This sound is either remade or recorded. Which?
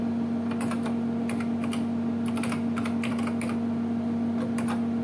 recorded